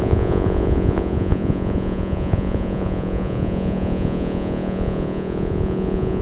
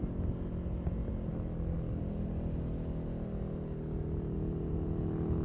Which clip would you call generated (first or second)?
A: first